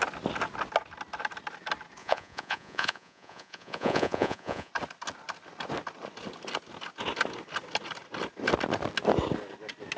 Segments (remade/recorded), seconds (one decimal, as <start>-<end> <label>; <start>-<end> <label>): 0.0-2.0 recorded; 2.0-4.7 remade; 4.7-10.0 recorded